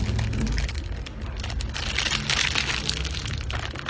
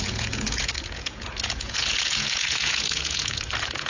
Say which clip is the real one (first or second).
first